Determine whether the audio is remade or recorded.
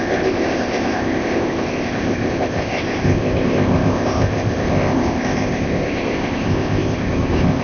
remade